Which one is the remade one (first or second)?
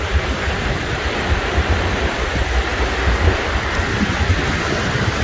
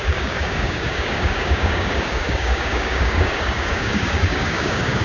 second